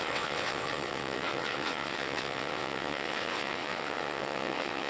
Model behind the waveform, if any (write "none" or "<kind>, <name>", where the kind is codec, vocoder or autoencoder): vocoder, WaveNeXt